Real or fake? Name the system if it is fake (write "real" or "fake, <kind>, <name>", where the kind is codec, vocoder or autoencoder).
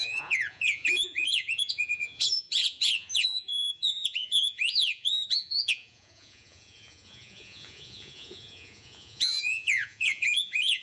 fake, vocoder, Vocos